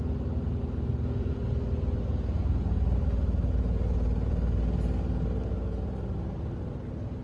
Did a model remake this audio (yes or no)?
no